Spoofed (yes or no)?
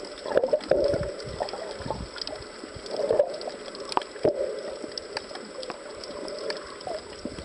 no